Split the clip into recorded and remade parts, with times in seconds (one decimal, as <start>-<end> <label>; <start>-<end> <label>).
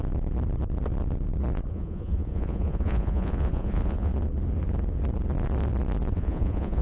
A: 0.0-1.7 recorded; 1.7-4.1 remade; 4.1-6.1 recorded; 6.1-6.8 remade